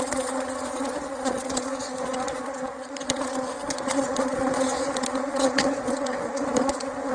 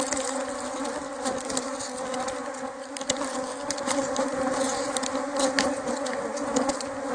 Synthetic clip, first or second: first